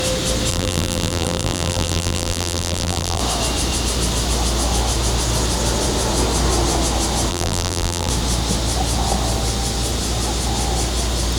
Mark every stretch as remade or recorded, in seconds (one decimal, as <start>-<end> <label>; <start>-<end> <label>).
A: 0.0-0.5 recorded; 0.5-3.2 remade; 3.2-7.3 recorded; 7.3-8.1 remade; 8.1-11.4 recorded